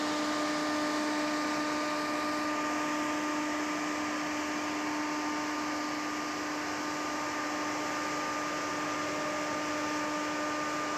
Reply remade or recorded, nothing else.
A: recorded